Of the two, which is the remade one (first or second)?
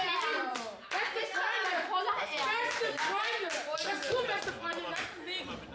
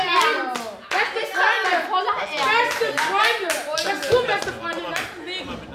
first